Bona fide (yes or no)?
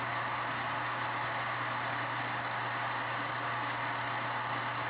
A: yes